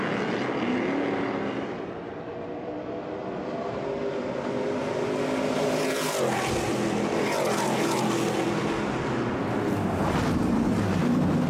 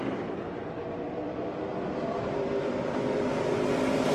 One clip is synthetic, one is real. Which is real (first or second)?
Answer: first